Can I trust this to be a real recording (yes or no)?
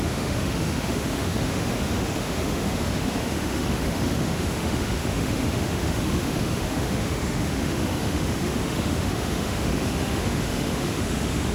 no